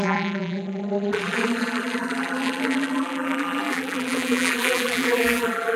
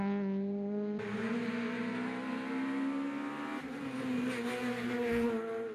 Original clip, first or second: second